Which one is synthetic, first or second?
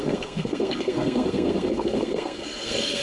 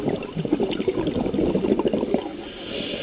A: first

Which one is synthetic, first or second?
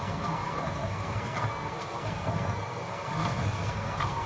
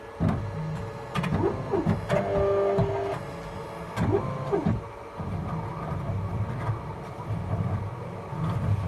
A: first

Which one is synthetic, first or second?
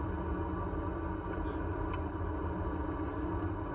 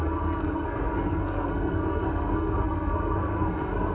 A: second